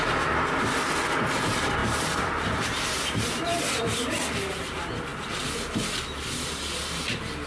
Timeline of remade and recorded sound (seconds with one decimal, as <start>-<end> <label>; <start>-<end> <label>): 0.0-1.8 recorded; 1.8-3.0 remade; 3.0-7.5 recorded